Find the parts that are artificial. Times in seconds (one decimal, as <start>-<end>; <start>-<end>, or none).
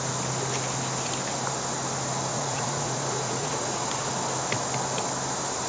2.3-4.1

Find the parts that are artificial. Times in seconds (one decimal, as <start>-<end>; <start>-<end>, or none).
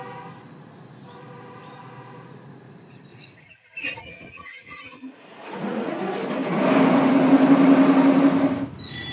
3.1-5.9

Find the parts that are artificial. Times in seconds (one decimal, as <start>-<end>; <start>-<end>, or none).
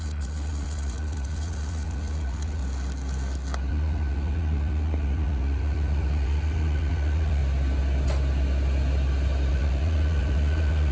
0.0-2.6; 3.7-7.4; 9.5-10.9